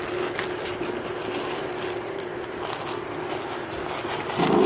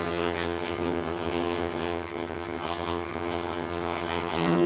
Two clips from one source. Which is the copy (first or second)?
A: second